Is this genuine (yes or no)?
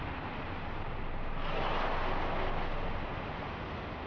yes